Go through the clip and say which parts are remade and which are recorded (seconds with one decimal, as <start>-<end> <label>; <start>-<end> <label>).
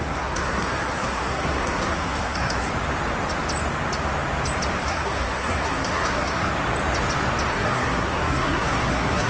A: 0.0-2.7 remade; 2.7-4.8 recorded; 4.8-6.5 remade; 6.5-7.5 recorded; 7.5-9.3 remade